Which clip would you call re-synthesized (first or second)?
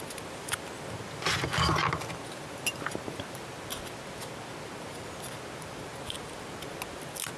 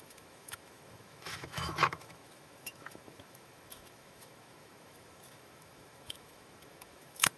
second